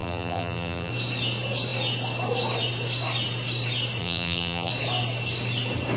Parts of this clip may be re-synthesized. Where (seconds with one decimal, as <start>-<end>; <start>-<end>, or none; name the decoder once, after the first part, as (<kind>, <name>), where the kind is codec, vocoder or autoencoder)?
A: 0.0-0.9 (vocoder, BigVGAN v2); 4.0-4.7